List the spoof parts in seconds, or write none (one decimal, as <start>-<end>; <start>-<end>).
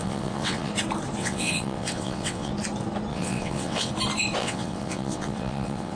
0.0-0.7; 1.2-2.5; 3.1-3.9; 4.4-6.0